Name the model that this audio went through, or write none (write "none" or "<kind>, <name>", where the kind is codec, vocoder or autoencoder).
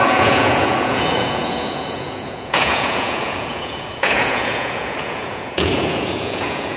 vocoder, Vocos